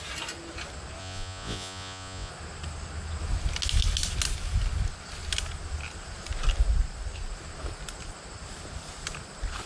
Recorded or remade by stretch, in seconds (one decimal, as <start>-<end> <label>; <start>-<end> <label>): 0.0-1.0 recorded; 1.0-2.3 remade; 2.3-9.7 recorded